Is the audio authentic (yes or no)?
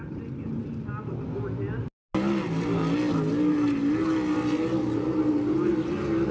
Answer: yes